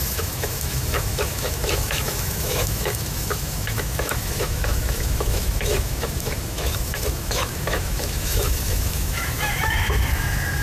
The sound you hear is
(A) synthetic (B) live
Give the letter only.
A